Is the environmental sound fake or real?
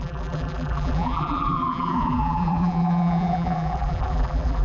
fake